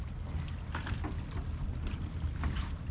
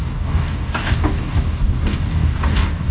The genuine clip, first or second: first